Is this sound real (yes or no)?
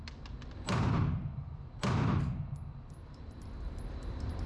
no